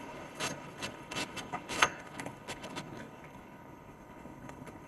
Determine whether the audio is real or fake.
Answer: fake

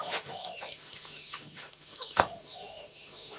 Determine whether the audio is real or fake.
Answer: fake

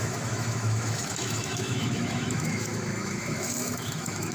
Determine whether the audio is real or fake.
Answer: fake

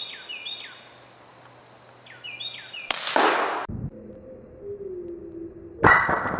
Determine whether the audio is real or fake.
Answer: real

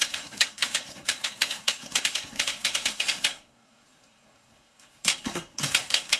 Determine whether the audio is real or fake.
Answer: fake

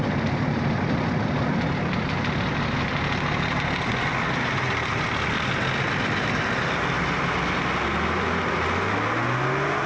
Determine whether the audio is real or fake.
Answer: real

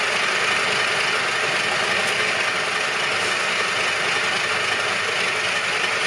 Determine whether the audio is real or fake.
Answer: real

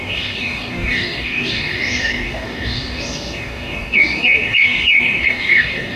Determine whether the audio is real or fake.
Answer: fake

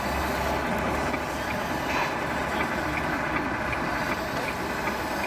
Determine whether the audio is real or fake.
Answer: real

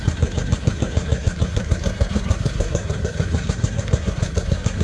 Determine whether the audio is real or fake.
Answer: fake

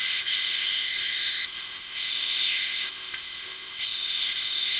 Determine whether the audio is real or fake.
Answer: fake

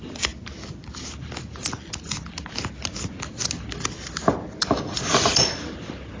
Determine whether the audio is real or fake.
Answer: real